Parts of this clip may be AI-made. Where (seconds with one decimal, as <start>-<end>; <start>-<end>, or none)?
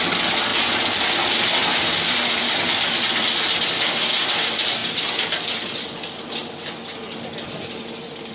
0.5-2.3